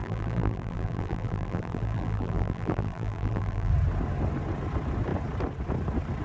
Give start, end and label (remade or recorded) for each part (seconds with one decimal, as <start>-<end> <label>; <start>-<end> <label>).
0.0-3.7 remade; 3.7-6.2 recorded

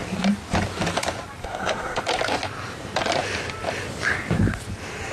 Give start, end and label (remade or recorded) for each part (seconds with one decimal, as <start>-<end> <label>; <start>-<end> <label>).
0.0-1.4 recorded; 1.4-2.0 remade; 2.0-5.1 recorded

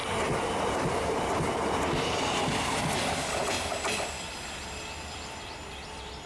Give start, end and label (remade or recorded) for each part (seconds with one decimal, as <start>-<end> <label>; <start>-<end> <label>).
0.0-6.3 recorded